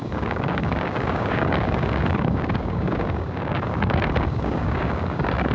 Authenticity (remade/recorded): remade